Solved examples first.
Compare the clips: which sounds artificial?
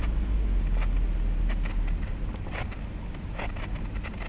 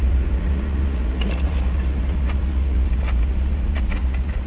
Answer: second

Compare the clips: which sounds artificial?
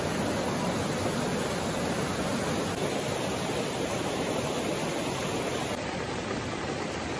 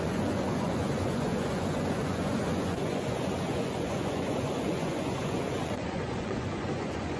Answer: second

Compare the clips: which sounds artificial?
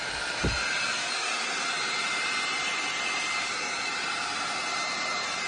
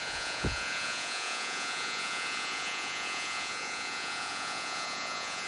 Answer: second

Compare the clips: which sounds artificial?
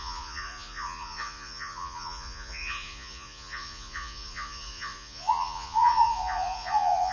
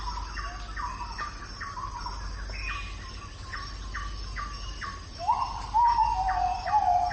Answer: first